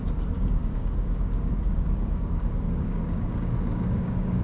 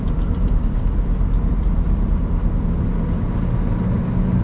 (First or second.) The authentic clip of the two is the second